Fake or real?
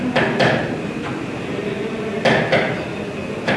real